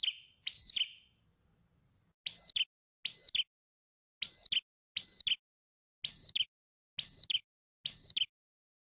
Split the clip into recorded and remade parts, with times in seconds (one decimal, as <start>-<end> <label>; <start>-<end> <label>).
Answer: 0.0-8.9 recorded